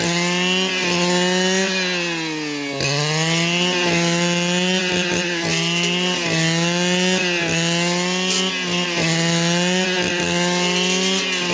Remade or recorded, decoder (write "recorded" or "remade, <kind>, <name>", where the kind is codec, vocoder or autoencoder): recorded